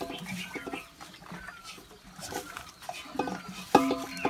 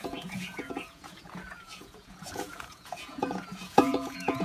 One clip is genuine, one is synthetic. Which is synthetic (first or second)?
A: second